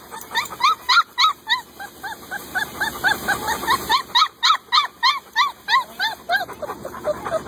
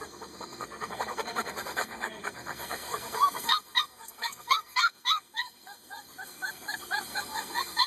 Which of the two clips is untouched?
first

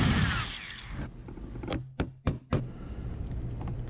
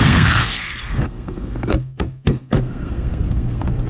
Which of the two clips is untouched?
first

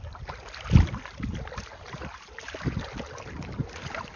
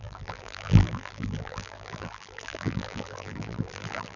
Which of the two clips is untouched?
first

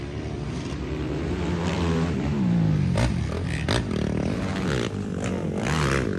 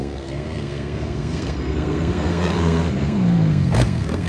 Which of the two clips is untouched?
first